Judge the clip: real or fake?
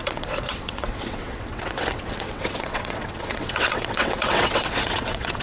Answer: fake